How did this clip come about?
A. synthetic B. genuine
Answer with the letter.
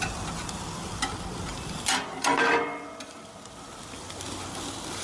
B